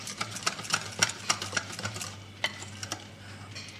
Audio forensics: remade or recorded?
recorded